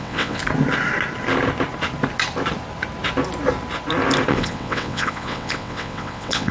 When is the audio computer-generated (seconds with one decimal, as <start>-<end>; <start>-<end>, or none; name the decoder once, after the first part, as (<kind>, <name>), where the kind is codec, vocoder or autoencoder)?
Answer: 0.0-0.4 (vocoder, WaveNeXt); 4.3-6.5

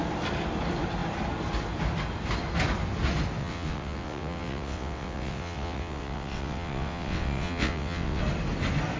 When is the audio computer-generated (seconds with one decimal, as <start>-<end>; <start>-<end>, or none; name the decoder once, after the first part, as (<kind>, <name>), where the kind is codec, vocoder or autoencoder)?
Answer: 3.4-8.2 (vocoder, WaveNeXt)

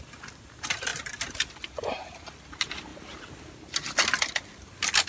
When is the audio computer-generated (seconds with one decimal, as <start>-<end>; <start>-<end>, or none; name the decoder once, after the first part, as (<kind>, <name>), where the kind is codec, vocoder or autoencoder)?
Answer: none

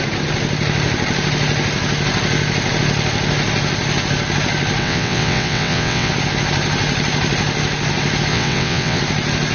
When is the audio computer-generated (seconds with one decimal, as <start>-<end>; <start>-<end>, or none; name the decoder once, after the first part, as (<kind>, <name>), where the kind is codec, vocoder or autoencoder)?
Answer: 4.8-6.1 (vocoder, WaveNeXt); 8.3-9.0